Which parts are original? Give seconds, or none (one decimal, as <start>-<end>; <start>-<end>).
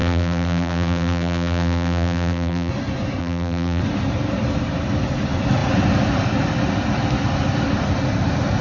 2.7-3.2; 3.8-8.6